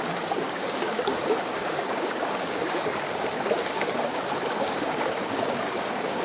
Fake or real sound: fake